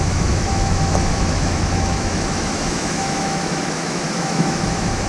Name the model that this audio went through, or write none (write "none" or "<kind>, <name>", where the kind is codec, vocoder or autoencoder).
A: autoencoder, DAC-VAE